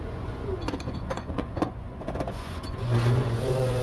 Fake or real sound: fake